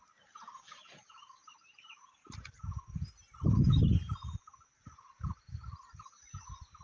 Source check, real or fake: fake